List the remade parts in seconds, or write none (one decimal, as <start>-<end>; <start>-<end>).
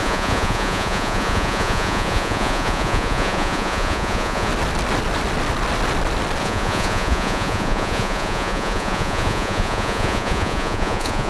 0.0-4.5; 6.4-11.3